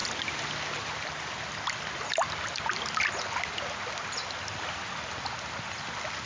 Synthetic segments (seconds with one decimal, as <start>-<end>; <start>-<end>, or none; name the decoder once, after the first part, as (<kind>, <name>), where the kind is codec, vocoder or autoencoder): none